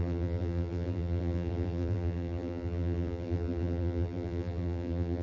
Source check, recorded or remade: remade